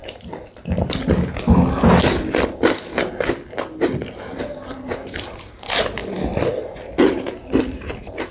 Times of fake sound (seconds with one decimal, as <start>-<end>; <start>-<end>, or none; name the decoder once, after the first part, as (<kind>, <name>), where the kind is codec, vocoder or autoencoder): 4.4-6.0 (vocoder, BigVGAN v2); 7.1-8.3